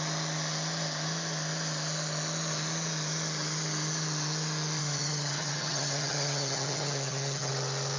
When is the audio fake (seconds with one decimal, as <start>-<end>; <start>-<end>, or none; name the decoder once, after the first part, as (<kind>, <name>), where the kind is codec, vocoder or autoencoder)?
4.8-7.5 (vocoder, HiFi-GAN)